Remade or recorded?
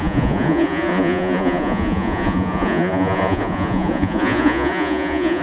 remade